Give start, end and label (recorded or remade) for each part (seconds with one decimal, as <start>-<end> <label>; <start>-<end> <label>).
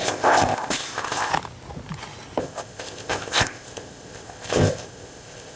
0.0-1.3 remade; 1.3-2.4 recorded; 2.4-5.6 remade